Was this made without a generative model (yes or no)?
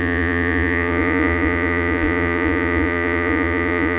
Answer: no